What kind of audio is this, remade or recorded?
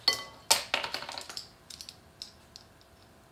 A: recorded